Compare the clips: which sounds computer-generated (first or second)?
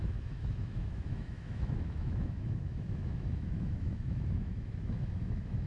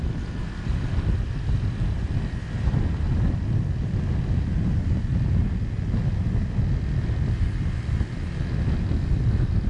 first